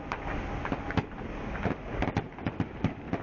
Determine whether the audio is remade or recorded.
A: recorded